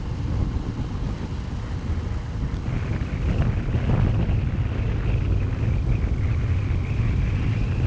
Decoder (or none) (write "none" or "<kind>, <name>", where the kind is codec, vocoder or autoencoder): none